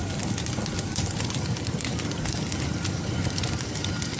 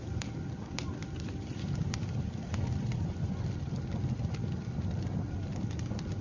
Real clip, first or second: first